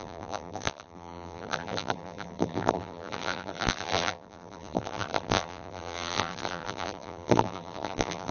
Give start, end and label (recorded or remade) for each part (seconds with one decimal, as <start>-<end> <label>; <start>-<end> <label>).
0.0-8.3 remade